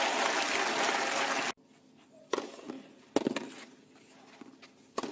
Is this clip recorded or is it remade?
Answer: recorded